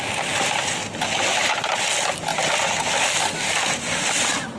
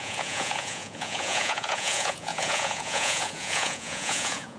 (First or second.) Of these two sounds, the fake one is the second